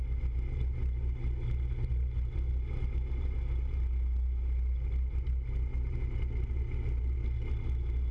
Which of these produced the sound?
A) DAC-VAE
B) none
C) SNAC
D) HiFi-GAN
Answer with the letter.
B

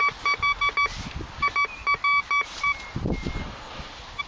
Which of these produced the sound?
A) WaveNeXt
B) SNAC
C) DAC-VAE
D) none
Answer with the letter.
D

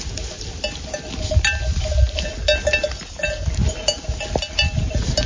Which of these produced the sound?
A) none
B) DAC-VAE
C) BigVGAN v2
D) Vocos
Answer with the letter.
A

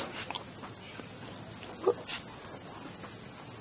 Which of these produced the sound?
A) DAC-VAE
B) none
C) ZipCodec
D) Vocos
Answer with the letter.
B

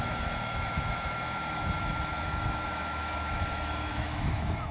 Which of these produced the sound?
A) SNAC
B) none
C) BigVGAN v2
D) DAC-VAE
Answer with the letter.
D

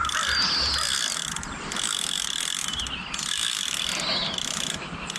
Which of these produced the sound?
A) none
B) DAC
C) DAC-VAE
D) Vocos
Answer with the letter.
A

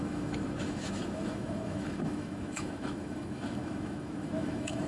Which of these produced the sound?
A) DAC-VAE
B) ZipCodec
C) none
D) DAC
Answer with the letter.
A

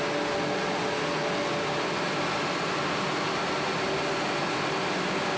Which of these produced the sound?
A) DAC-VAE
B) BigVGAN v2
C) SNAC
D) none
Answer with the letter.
D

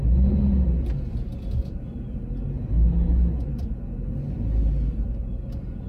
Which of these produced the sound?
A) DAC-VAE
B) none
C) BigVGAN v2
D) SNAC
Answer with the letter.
B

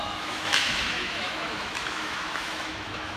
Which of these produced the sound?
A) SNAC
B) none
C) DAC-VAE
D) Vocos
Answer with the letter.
C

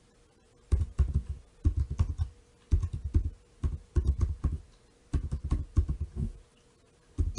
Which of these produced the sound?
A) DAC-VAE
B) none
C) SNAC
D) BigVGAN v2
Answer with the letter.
B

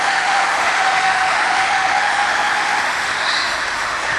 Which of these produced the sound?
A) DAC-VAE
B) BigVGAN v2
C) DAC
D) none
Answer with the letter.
A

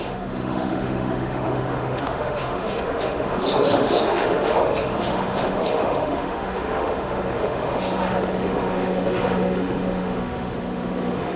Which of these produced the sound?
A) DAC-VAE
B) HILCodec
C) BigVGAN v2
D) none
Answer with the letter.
A